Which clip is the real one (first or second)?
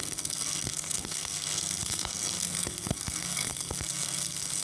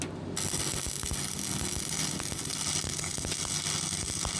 second